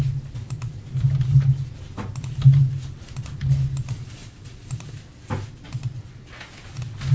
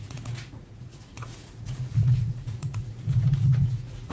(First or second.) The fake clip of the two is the second